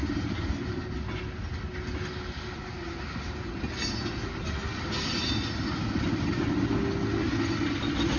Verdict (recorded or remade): recorded